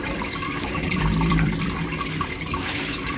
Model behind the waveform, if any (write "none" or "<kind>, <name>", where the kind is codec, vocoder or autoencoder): vocoder, BigVGAN v2